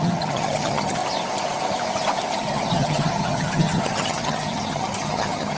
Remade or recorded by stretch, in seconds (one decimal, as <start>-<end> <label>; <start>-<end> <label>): 0.0-1.0 remade; 1.0-2.4 recorded; 2.4-5.6 remade